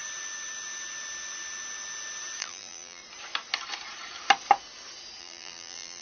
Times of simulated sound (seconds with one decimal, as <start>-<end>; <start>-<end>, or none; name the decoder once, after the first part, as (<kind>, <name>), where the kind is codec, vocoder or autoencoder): 2.4-3.0 (vocoder, BigVGAN v2); 5.2-6.0